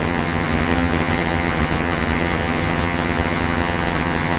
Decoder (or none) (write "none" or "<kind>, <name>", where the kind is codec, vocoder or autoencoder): vocoder, HiFi-GAN